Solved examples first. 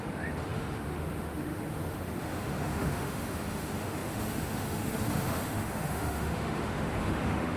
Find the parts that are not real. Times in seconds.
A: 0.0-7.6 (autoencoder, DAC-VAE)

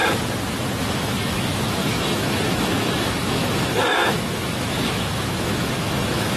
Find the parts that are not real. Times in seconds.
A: 0.8-6.4 (autoencoder, DAC-VAE)